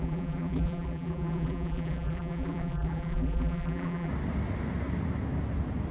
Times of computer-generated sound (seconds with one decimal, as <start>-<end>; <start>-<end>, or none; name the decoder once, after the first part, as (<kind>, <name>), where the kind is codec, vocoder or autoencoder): 0.0-4.1 (vocoder, BigVGAN v2)